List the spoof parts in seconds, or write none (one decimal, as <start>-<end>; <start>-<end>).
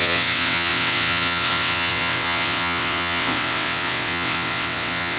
0.0-5.2